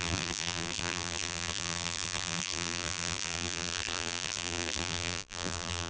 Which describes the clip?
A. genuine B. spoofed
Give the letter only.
B